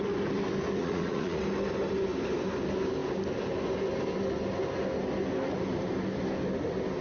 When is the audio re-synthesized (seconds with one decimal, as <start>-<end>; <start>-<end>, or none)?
0.8-1.4